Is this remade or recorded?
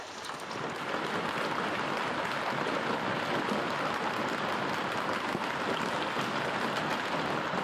recorded